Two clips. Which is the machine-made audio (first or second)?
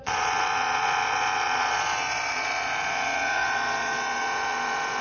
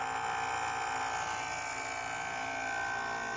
first